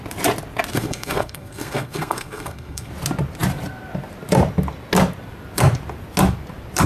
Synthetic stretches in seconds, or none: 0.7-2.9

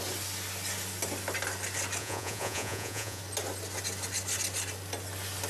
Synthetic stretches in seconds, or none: 2.0-3.2

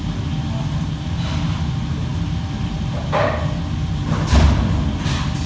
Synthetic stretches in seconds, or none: none